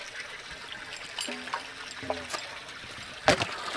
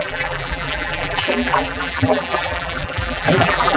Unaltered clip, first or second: first